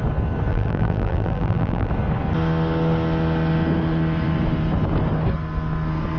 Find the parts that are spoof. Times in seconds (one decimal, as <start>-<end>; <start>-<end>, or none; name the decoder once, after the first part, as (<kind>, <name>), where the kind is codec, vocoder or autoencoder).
0.5-1.9 (vocoder, BigVGAN v2)